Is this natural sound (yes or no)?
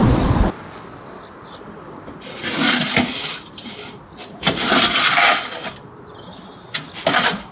yes